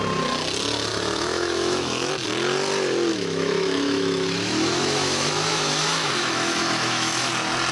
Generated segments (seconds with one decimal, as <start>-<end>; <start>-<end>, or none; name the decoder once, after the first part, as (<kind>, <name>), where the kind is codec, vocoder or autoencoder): 0.9-2.1 (autoencoder, DAC-VAE); 3.1-7.3